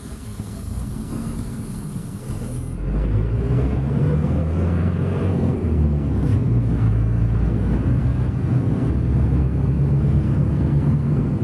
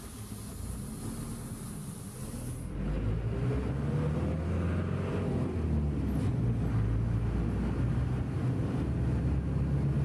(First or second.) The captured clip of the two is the second